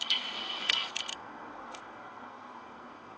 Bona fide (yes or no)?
no